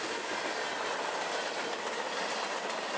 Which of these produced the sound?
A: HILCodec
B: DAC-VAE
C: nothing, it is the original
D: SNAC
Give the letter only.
C